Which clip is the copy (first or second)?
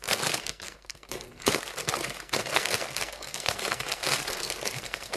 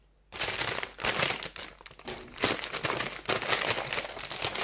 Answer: first